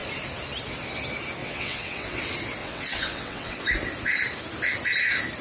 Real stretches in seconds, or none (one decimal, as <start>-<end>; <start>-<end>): 0.0-1.4; 2.2-2.6; 3.6-5.4